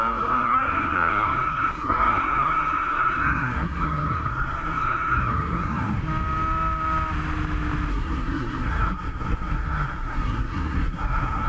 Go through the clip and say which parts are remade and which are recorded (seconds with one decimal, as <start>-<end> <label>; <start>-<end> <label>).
0.0-6.0 remade; 6.0-7.9 recorded; 7.9-11.5 remade